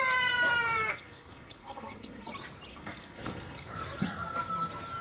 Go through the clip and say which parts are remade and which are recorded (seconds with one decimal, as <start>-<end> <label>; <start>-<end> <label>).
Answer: 0.0-0.9 recorded; 0.9-2.3 remade; 2.3-2.7 recorded; 2.7-3.7 remade; 3.7-5.0 recorded